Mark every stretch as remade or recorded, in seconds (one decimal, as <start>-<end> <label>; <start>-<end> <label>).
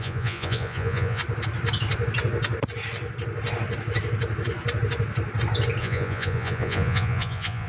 0.0-1.2 remade; 1.2-5.8 recorded; 5.8-7.7 remade